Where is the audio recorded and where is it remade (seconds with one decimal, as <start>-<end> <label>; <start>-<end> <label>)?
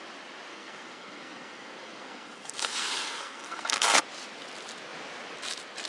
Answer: 0.0-0.5 recorded; 0.5-4.0 remade; 4.0-5.9 recorded